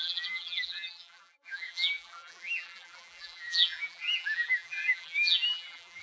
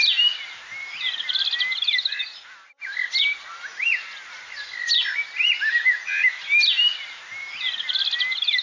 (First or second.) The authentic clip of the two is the second